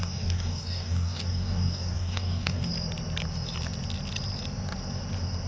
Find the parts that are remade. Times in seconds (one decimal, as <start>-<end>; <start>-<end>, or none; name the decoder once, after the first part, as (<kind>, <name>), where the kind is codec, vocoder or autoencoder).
0.0-2.7 (codec, DAC)